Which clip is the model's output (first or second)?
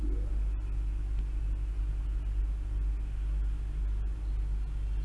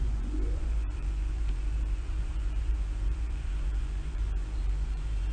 second